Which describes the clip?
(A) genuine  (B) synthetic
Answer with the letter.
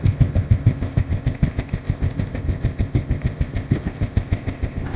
B